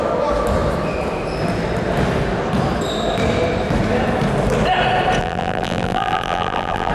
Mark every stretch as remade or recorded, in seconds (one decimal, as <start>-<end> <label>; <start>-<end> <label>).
0.0-5.2 recorded; 5.2-6.9 remade